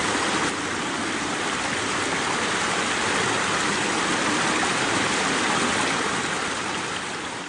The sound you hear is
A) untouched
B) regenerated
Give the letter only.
A